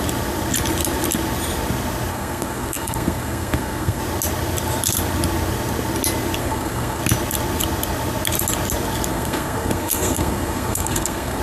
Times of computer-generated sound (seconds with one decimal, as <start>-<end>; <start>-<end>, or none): 2.1-4.0; 6.4-7.0; 9.1-11.4